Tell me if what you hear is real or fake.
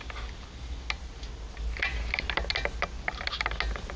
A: real